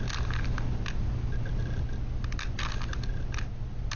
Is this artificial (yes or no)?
no